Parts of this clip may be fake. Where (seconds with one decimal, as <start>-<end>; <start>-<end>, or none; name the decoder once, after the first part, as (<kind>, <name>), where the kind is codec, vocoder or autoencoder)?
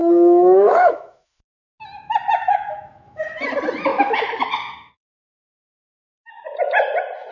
0.0-1.7 (autoencoder, DAC-VAE); 2.4-3.2; 3.9-6.3